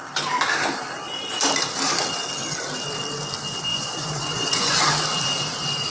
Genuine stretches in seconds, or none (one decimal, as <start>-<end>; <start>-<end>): 0.0-3.7; 4.8-5.9